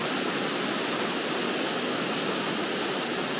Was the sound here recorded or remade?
recorded